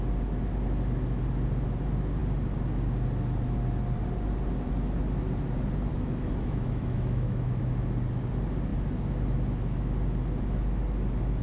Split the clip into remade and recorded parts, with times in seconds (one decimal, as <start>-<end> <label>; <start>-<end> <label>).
0.0-5.9 recorded; 5.9-7.6 remade; 7.6-11.4 recorded